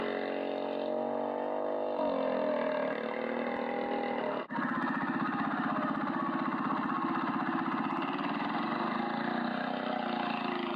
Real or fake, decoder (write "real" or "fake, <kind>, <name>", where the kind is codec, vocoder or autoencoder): real